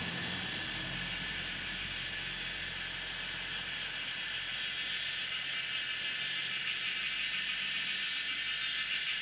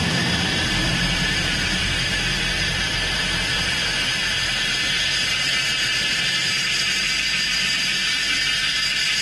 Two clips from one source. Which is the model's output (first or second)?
second